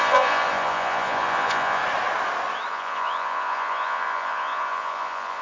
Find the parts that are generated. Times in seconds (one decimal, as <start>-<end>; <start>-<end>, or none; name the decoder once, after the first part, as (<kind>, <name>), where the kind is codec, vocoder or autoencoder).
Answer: 0.0-1.8 (vocoder, Vocos); 2.7-5.4